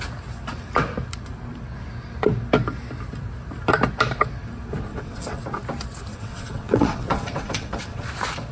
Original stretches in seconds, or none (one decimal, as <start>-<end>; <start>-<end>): 0.0-4.9; 5.4-6.1; 8.1-8.5